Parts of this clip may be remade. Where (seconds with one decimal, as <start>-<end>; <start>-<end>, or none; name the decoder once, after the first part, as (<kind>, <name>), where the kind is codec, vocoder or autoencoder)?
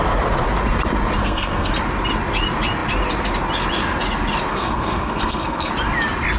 1.2-1.7 (codec, SNAC); 4.5-5.7